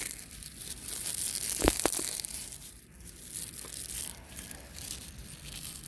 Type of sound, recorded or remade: remade